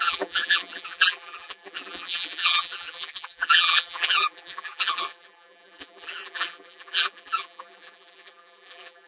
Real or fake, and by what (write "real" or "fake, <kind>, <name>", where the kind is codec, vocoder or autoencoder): fake, vocoder, BigVGAN v2